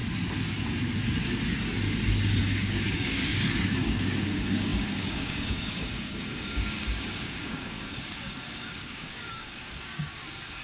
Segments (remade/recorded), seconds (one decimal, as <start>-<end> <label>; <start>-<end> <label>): 0.0-2.4 recorded; 2.4-10.6 remade